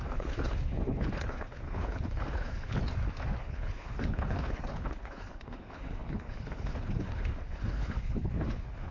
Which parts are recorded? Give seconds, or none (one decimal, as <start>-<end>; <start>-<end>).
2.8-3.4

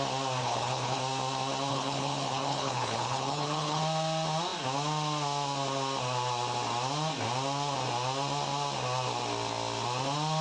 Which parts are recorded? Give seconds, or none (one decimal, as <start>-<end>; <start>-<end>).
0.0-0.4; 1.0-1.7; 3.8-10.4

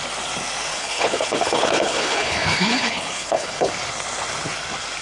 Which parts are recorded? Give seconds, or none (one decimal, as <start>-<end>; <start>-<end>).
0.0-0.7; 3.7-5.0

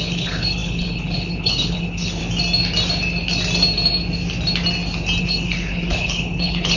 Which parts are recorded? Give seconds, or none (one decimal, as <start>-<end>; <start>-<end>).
2.2-5.2

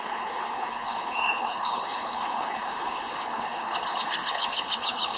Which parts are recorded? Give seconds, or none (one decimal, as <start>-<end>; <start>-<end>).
none

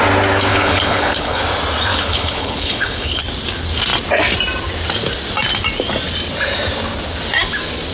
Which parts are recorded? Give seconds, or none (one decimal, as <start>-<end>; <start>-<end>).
0.0-0.5; 1.4-1.9; 3.2-7.9

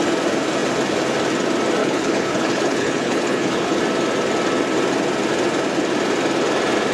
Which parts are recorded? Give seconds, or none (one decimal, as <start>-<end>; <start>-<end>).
0.0-1.8; 3.8-6.9

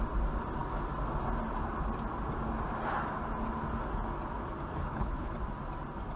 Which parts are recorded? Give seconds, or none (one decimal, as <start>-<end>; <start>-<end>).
0.0-4.7; 5.3-6.2